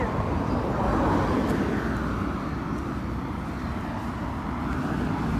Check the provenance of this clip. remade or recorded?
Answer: recorded